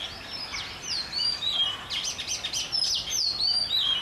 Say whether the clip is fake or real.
real